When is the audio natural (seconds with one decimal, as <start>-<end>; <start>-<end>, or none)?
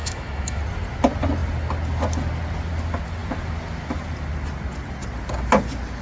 0.6-6.0